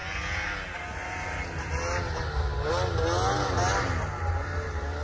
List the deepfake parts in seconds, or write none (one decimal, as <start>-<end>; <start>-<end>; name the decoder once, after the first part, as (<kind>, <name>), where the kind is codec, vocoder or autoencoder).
none